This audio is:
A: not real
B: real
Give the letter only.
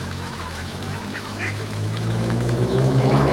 A